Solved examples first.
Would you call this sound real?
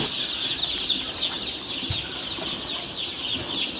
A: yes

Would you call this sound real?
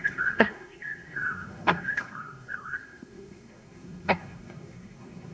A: no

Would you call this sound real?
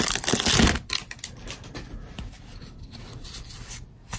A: yes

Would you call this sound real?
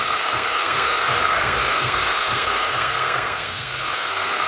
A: no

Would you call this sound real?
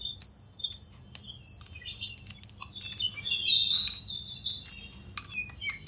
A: yes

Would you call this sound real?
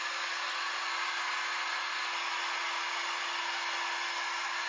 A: yes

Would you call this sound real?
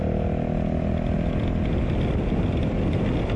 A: yes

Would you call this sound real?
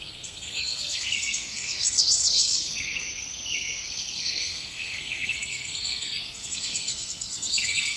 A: no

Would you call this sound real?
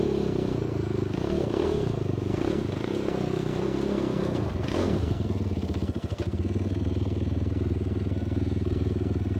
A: no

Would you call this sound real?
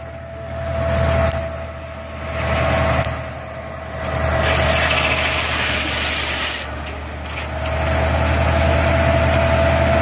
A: yes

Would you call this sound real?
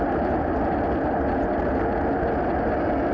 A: yes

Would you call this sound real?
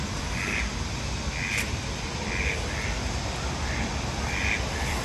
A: yes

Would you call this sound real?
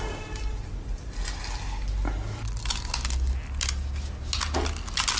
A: yes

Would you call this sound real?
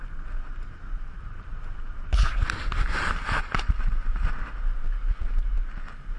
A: yes